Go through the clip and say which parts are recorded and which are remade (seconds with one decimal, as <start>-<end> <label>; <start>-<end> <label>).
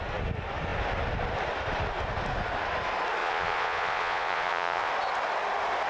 0.0-3.2 recorded; 3.2-4.9 remade; 4.9-5.9 recorded